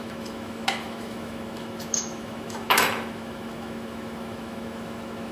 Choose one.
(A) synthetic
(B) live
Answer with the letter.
A